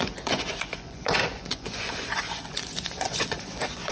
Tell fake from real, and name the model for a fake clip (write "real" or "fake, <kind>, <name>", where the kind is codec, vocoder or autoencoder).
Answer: fake, vocoder, Vocos